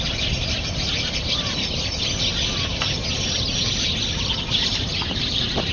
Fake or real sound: fake